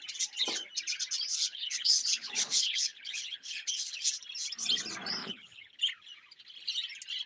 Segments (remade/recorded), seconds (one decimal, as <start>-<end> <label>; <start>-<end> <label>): 0.0-1.3 recorded; 1.3-4.1 remade; 4.1-5.2 recorded; 5.2-5.8 remade; 5.8-7.3 recorded